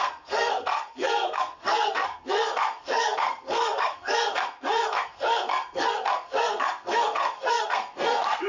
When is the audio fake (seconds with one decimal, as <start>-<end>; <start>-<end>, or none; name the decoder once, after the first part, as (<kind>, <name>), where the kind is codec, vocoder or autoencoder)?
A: 0.0-8.5 (codec, SNAC)